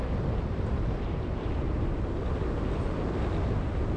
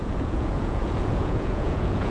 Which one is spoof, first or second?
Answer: second